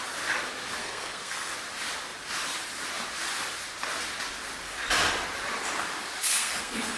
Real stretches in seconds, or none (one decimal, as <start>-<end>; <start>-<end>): 0.0-0.8; 1.5-6.2